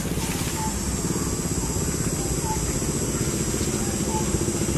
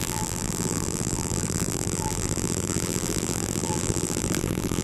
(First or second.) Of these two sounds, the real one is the first